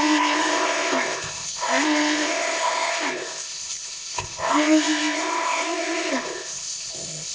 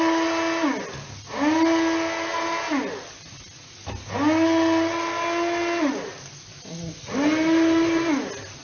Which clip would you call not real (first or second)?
first